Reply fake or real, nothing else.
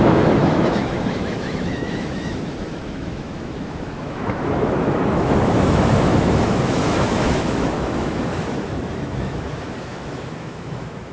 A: fake